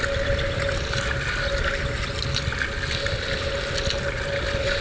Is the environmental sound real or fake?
real